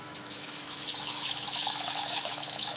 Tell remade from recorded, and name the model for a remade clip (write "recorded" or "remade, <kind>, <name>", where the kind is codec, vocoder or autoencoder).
remade, autoencoder, DAC-VAE